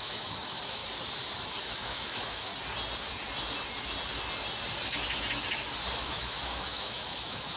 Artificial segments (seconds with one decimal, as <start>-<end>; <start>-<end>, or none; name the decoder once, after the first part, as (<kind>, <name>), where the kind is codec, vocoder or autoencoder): 0.0-0.8 (autoencoder, DAC-VAE); 1.6-2.5; 5.9-7.6